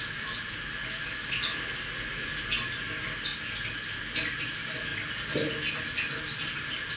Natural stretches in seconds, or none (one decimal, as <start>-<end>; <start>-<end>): 0.0-7.0